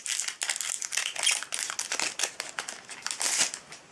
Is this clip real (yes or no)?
yes